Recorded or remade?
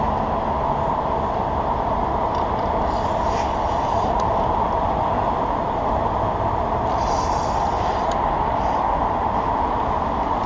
recorded